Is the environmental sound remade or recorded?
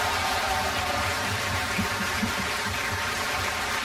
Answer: remade